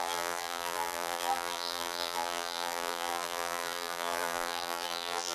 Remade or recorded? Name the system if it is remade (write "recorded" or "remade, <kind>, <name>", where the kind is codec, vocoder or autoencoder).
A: remade, vocoder, BigVGAN v2